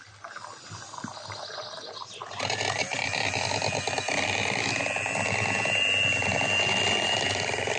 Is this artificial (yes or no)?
no